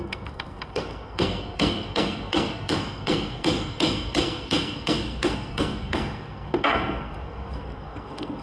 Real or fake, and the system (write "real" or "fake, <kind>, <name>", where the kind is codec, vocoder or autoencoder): fake, codec, SNAC